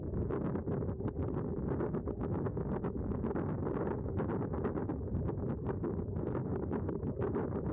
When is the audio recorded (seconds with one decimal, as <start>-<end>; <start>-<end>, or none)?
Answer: 0.0-4.8